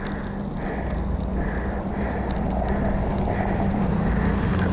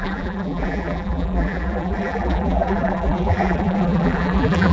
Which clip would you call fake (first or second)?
second